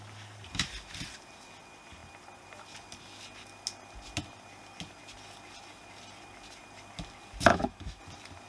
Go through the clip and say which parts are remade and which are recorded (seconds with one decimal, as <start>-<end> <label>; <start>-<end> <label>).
0.0-7.5 recorded; 7.5-8.0 remade; 8.0-8.5 recorded